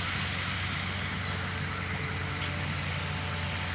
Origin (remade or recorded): recorded